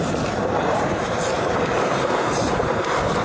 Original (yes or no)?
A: no